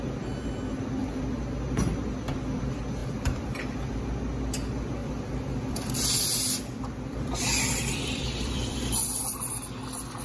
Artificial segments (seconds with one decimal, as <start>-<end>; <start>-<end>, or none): 3.0-4.0; 5.0-9.2